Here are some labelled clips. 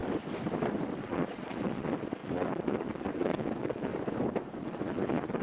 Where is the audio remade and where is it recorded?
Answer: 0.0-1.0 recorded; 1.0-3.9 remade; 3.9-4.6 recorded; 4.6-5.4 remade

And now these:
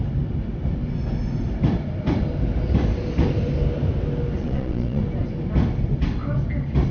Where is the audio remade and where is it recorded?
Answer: 0.0-4.4 recorded; 4.4-5.0 remade; 5.0-6.9 recorded

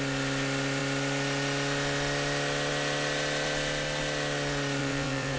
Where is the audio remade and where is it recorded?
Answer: 0.0-4.8 recorded; 4.8-5.4 remade

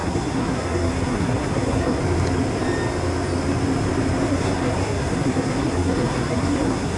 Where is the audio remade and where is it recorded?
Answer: 0.0-2.0 remade; 2.0-4.3 recorded; 4.3-7.0 remade